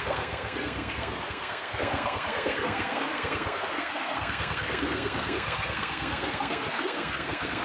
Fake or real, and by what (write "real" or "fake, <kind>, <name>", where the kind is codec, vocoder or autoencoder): fake, codec, SNAC